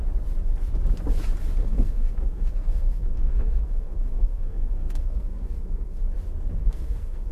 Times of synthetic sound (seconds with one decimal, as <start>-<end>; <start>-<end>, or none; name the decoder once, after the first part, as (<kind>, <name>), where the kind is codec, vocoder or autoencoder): 1.6-6.0 (codec, SNAC); 6.6-7.3